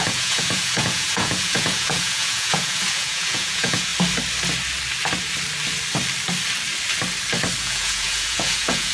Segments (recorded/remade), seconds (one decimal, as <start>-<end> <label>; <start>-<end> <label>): 0.0-3.9 remade; 3.9-7.6 recorded; 7.6-8.9 remade